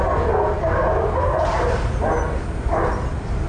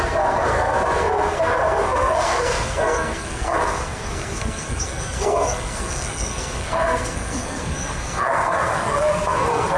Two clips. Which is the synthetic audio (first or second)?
second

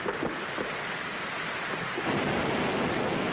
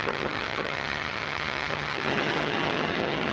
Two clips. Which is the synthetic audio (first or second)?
second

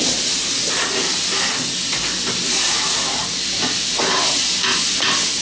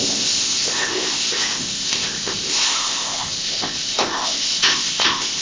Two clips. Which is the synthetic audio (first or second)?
second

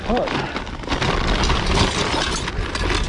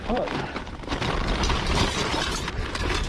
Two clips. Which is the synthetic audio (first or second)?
second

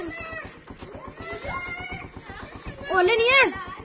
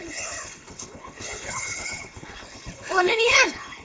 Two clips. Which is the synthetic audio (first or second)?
second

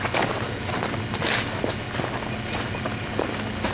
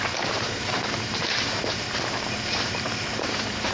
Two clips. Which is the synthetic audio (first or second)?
second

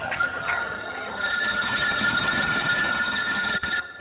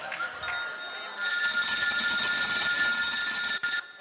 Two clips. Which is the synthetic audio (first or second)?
first